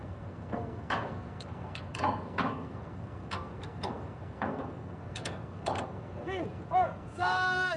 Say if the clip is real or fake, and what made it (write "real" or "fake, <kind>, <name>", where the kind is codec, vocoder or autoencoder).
fake, codec, SNAC